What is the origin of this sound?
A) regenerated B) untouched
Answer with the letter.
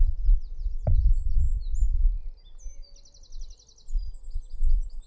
B